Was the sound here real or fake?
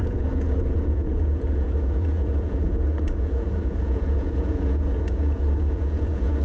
fake